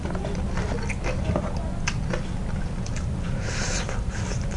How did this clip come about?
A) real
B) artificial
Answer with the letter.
A